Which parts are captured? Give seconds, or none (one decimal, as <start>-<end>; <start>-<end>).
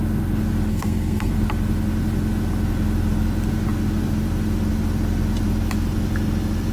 0.0-0.7; 1.3-6.7